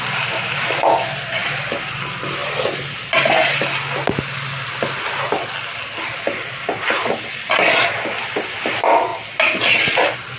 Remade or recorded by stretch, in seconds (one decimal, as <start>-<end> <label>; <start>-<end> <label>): 0.0-10.4 recorded